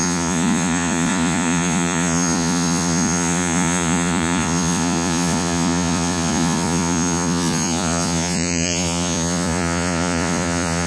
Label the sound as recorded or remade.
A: remade